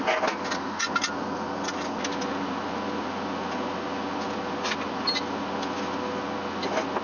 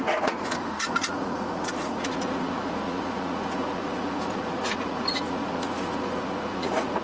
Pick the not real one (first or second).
second